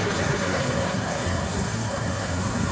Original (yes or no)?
no